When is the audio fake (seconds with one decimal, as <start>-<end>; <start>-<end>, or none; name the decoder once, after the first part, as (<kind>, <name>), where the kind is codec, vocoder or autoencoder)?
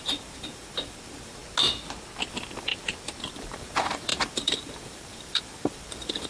0.0-1.4 (vocoder, BigVGAN v2); 2.3-2.7; 3.4-6.3